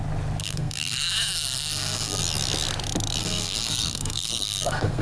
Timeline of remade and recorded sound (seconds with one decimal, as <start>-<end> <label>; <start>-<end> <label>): 0.0-0.4 recorded; 0.4-2.2 remade; 2.2-3.2 recorded; 3.2-5.0 remade

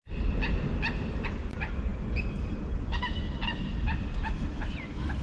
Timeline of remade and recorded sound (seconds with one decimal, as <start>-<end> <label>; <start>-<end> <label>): 0.0-5.2 recorded

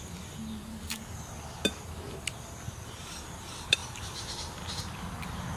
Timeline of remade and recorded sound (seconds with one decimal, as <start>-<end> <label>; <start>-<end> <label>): 0.0-0.7 recorded; 0.7-1.3 remade; 1.3-5.6 recorded

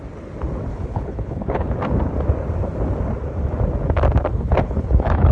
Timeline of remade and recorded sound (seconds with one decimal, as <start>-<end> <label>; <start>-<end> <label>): 0.0-0.7 recorded; 0.7-1.7 remade; 1.7-4.3 recorded; 4.3-5.3 remade

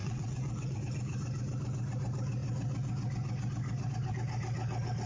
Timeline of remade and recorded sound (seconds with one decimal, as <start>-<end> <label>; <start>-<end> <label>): 0.0-0.8 remade; 0.8-5.1 recorded